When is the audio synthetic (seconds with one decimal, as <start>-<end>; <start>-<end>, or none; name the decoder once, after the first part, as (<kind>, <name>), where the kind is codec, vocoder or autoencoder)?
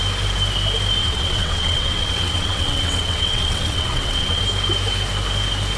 1.0-4.4 (vocoder, WaveNeXt)